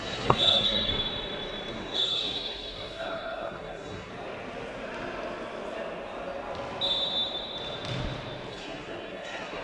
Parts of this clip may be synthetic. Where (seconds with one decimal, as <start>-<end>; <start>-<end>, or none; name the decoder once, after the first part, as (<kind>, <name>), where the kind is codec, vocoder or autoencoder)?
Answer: 0.0-0.9 (codec, SNAC); 1.7-4.1; 8.5-9.6